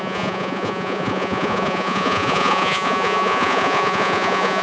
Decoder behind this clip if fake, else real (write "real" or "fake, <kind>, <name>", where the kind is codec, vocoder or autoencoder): fake, vocoder, Vocos